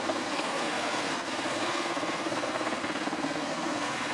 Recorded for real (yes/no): no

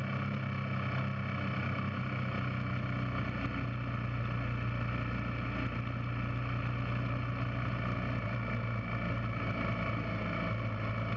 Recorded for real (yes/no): yes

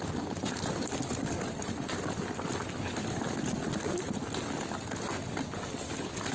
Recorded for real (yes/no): yes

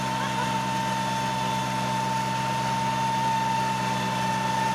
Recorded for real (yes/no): yes